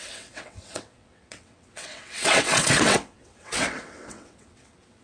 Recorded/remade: remade